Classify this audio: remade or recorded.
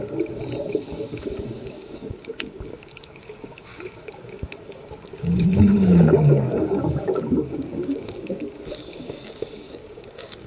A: remade